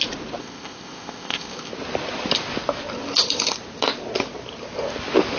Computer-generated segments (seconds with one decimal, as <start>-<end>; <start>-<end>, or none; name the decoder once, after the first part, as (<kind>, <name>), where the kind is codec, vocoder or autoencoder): 0.4-1.7 (codec, ZipCodec)